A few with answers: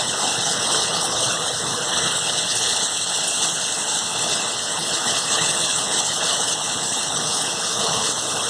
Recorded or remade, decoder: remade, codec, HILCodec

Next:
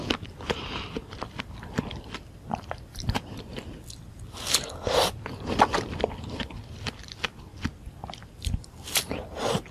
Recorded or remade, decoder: remade, vocoder, BigVGAN v2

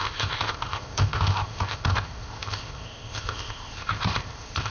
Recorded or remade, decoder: remade, codec, ZipCodec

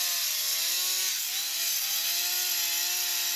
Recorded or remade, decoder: recorded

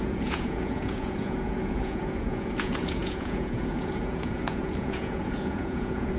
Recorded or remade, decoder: remade, vocoder, Vocos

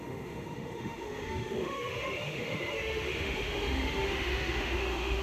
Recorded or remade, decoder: remade, autoencoder, DAC-VAE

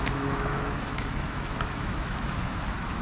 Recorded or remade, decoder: remade, autoencoder, DAC-VAE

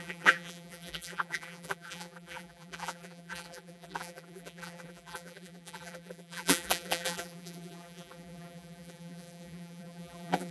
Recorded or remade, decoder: remade, vocoder, BigVGAN v2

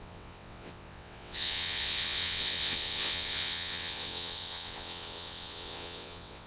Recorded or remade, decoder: remade, vocoder, WaveNeXt